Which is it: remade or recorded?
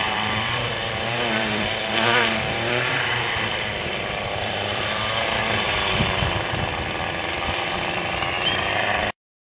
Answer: remade